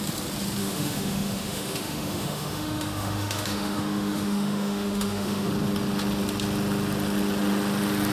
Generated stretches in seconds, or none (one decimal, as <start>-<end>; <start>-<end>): 0.6-5.5

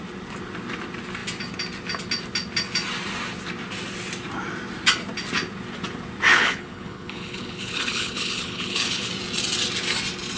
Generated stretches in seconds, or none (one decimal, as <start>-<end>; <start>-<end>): 6.3-9.1

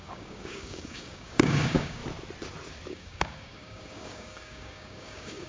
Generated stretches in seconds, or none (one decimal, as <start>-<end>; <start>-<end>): 0.0-2.0; 2.9-5.5

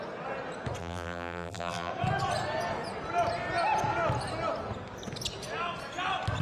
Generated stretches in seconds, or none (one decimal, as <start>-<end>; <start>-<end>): 0.8-1.9

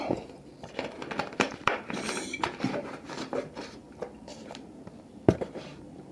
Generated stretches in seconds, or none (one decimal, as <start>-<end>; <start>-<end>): 0.0-0.5; 1.3-6.1

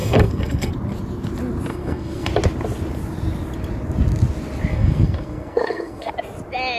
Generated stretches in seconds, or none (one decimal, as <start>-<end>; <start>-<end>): 0.0-0.7; 1.7-2.3; 4.7-6.1

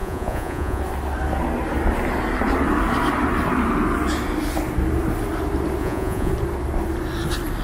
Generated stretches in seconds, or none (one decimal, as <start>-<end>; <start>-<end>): 0.0-0.8; 5.8-6.3